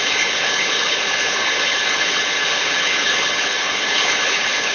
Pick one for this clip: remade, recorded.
remade